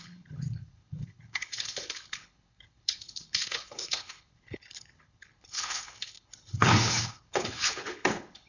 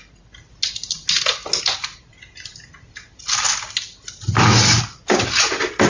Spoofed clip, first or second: first